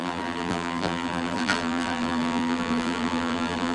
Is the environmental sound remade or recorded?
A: remade